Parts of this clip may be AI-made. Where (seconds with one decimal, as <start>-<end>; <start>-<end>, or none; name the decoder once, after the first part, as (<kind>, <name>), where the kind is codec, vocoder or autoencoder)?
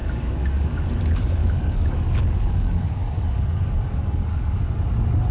0.0-0.9 (codec, DAC); 1.4-4.6